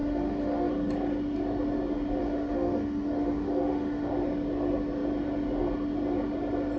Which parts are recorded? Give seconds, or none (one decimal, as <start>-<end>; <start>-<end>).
0.7-2.2; 4.1-6.8